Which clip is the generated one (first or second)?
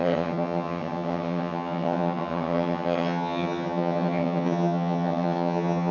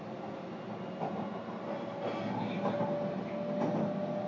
first